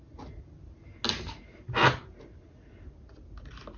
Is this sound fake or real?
real